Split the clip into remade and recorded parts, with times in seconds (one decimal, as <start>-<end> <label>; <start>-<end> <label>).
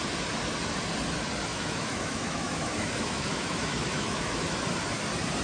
0.0-1.5 recorded; 1.5-4.5 remade; 4.5-5.4 recorded